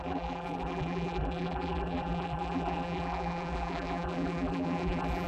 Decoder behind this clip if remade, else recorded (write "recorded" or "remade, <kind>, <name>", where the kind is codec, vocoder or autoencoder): remade, vocoder, BigVGAN v2